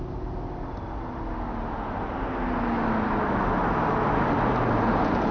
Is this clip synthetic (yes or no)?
no